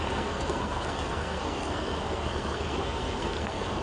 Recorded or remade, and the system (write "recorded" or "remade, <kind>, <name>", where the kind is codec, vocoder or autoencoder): remade, codec, SNAC